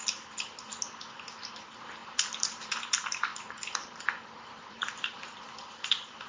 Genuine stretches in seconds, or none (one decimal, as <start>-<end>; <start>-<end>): 0.0-2.0; 2.8-3.3; 5.4-6.3